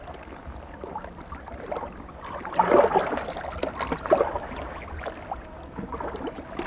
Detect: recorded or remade recorded